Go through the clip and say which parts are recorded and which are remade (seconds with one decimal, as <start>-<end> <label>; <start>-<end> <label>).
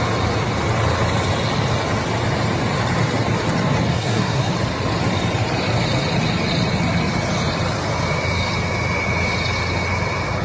0.0-3.9 recorded; 3.9-4.5 remade; 4.5-10.4 recorded